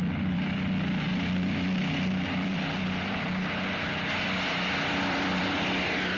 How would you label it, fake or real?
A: fake